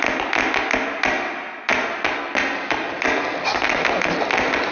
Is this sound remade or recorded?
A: recorded